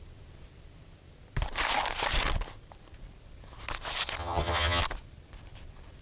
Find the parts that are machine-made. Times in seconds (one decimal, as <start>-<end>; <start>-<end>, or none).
4.2-4.8